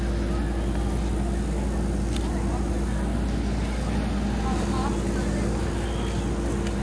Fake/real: real